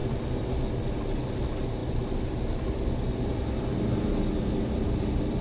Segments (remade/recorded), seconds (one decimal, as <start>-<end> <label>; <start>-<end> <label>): 0.0-5.4 recorded